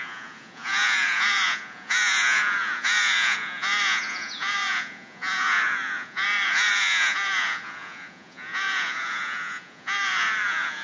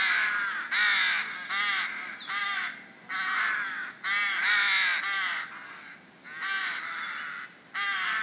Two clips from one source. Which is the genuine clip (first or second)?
second